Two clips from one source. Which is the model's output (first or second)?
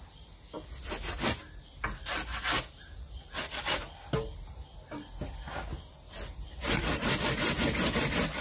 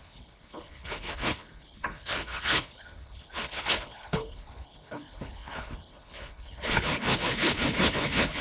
second